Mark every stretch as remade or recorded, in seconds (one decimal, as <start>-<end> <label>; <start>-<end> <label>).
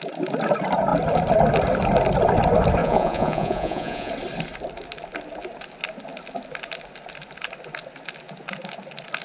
0.0-2.8 recorded; 2.8-4.1 remade; 4.1-9.2 recorded